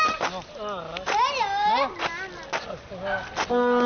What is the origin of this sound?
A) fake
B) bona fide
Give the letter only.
B